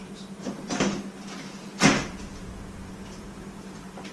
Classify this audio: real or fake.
fake